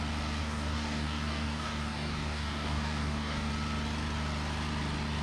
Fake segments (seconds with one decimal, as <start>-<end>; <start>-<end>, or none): 0.4-3.5